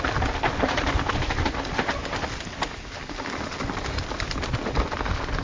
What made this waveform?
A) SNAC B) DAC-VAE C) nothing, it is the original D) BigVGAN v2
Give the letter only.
C